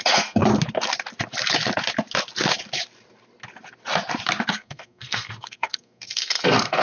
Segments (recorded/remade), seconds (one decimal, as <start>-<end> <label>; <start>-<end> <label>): 0.0-0.4 remade; 0.4-4.5 recorded; 4.5-6.8 remade